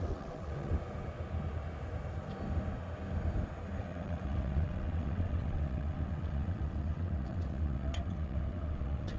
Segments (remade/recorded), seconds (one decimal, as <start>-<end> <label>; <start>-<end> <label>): 0.0-0.7 remade; 0.7-3.8 recorded; 3.8-9.2 remade